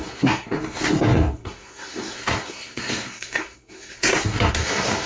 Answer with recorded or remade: remade